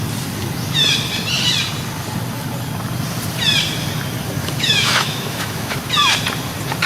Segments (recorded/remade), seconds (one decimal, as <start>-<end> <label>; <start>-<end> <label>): 0.0-4.4 recorded; 4.4-5.9 remade; 5.9-6.9 recorded